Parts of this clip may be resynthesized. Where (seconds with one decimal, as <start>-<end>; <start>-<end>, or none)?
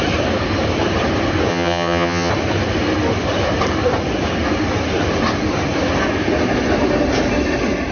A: 1.5-2.3